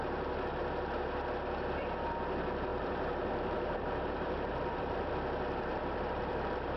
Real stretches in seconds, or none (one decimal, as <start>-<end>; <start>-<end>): 0.0-2.7; 5.1-5.7

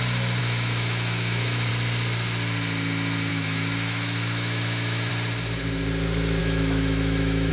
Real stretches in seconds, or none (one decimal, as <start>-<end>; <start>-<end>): 0.0-0.4; 1.7-3.3; 5.1-6.4

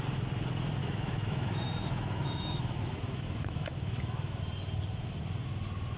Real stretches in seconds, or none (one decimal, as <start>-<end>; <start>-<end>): 0.0-0.8; 4.4-6.0

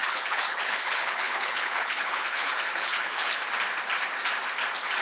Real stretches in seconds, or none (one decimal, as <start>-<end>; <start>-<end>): 3.4-5.0

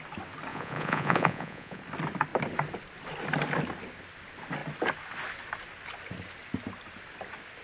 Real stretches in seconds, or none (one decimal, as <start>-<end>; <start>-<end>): 0.0-0.5; 1.8-7.6

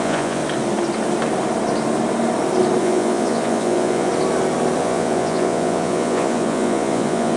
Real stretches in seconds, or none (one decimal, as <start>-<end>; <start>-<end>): 0.4-2.8; 4.1-4.8